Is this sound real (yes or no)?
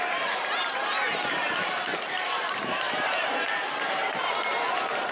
no